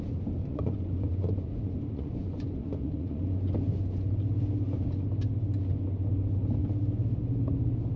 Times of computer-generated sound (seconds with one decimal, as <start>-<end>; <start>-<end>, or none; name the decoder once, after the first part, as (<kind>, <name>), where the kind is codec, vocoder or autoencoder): 0.4-3.2 (vocoder, Vocos)